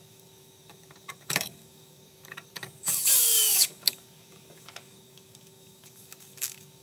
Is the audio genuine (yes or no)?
no